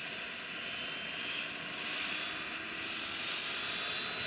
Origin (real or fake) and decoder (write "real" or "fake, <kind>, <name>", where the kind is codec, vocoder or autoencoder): real